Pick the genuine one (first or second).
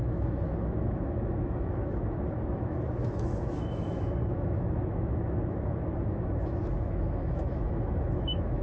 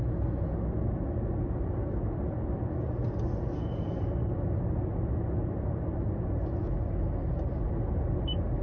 second